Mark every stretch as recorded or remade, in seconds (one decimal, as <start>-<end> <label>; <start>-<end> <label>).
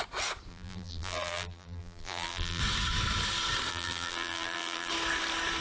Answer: 0.0-0.5 recorded; 0.5-2.6 remade; 2.6-3.7 recorded; 3.7-4.9 remade; 4.9-5.6 recorded